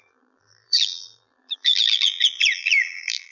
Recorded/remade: remade